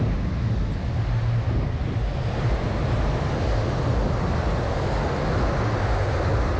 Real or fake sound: real